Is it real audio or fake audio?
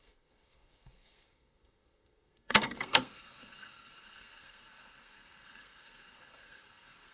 fake